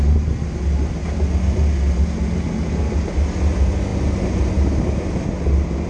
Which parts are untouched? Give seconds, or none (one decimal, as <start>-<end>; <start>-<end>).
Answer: 0.0-5.9